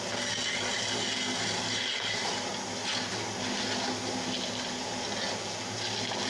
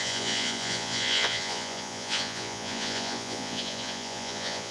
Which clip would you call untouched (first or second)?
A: first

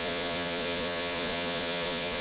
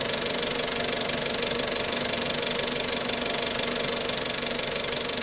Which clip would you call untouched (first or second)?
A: second